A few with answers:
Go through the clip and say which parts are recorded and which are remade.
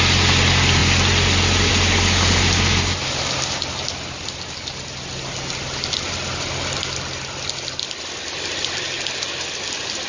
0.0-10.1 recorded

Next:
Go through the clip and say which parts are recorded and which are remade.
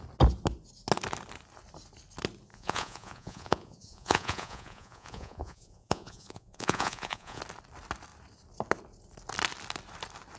0.0-2.5 recorded; 2.5-7.4 remade; 7.4-10.4 recorded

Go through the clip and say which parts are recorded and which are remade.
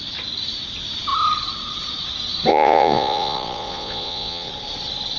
0.0-2.5 recorded; 2.5-4.5 remade; 4.5-5.2 recorded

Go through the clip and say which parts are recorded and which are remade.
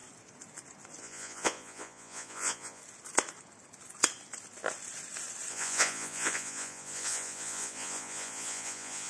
0.0-1.0 recorded; 1.0-2.8 remade; 2.8-5.5 recorded; 5.5-9.1 remade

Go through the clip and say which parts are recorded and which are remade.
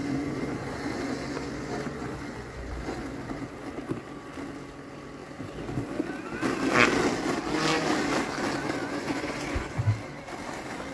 0.0-3.4 remade; 3.4-8.8 recorded; 8.8-9.8 remade; 9.8-10.9 recorded